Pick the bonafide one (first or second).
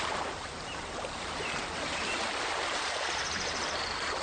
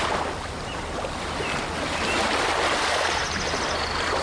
second